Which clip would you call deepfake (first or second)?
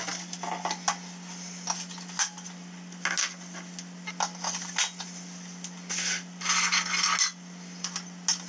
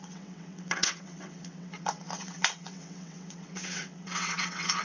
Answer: second